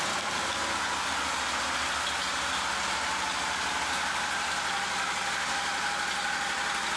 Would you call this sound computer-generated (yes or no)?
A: no